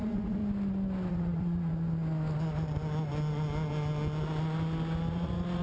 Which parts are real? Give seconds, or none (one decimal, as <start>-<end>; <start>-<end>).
0.4-1.1; 1.7-5.1